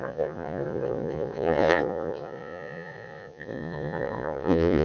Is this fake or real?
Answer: fake